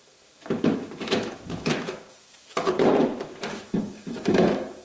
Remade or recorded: remade